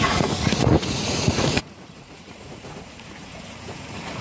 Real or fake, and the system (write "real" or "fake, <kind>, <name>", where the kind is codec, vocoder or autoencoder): fake, vocoder, Vocos